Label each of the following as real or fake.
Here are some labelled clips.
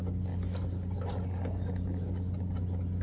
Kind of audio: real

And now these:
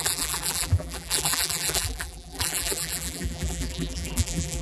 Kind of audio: fake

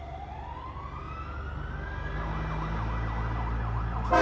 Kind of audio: real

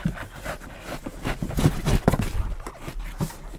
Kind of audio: real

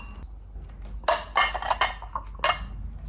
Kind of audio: real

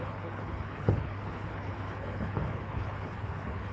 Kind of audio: fake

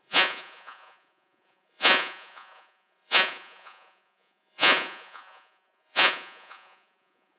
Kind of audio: fake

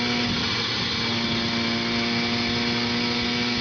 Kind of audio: real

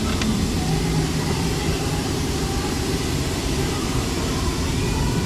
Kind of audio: fake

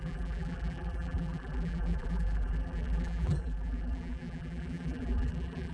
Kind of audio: fake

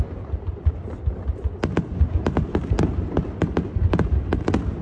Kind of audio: real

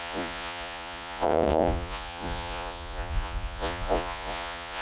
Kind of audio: fake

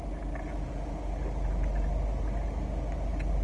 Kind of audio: real